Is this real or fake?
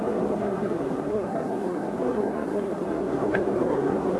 fake